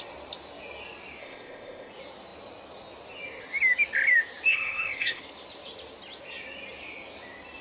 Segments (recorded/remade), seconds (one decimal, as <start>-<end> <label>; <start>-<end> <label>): 0.0-1.2 recorded; 1.2-1.9 remade; 1.9-4.5 recorded; 4.5-5.2 remade; 5.2-7.6 recorded